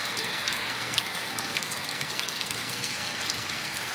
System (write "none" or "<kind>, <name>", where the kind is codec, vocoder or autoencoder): codec, SNAC